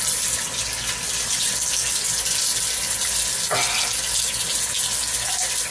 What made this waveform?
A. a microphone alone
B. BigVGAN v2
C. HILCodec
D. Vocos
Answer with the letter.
A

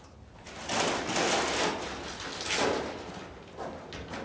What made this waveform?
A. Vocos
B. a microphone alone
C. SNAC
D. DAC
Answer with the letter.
B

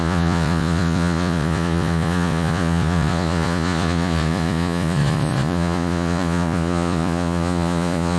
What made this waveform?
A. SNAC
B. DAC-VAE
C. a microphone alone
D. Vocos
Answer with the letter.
D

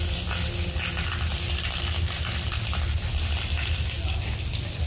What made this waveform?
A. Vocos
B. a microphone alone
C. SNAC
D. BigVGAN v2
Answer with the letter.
B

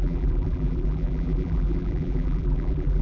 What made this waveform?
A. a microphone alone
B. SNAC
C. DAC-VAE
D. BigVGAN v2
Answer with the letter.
D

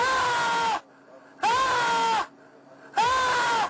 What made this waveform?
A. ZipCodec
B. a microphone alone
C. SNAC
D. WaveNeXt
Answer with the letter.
B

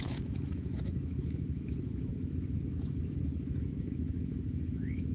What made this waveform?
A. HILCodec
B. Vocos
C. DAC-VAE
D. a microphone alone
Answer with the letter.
C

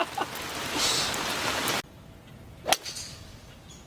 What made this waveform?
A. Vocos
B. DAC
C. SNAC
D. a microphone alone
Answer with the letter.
D